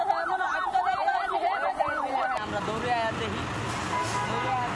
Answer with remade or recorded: recorded